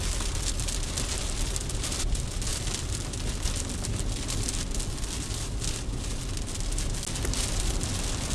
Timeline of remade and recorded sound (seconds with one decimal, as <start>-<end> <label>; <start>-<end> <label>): 0.0-8.3 recorded